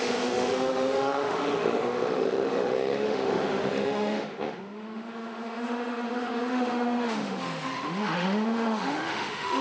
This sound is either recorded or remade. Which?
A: remade